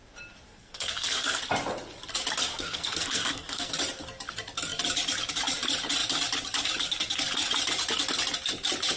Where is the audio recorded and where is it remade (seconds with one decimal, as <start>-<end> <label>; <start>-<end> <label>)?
0.0-0.5 recorded; 0.5-1.4 remade; 1.4-2.5 recorded; 2.5-3.7 remade; 3.7-9.0 recorded